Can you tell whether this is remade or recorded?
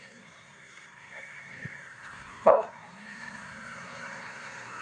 remade